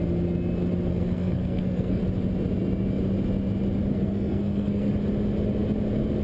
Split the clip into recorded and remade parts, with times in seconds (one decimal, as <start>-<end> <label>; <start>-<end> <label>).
0.0-0.9 recorded; 0.9-2.0 remade; 2.0-3.9 recorded; 3.9-4.9 remade; 4.9-6.2 recorded